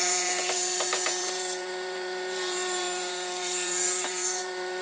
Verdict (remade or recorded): remade